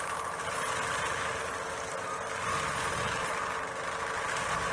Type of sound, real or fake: real